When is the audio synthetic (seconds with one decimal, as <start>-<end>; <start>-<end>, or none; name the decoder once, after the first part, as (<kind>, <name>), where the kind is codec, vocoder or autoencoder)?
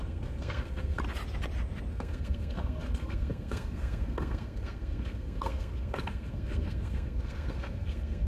0.0-1.0 (codec, SNAC); 1.9-8.3